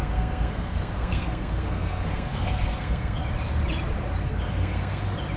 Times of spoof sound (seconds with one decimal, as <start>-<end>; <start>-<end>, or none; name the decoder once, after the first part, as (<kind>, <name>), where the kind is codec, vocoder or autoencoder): 0.0-3.2 (codec, SNAC); 4.2-5.0